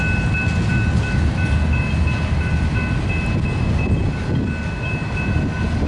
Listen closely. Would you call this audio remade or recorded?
recorded